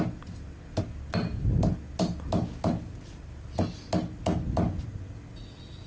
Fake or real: real